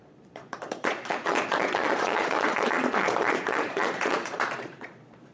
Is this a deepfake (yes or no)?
yes